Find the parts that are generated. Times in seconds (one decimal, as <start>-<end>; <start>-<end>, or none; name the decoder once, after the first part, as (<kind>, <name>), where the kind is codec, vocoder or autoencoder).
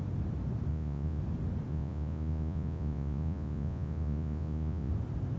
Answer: 0.7-1.2 (vocoder, Vocos); 1.7-4.9